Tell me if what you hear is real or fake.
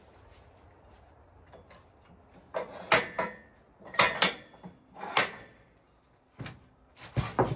real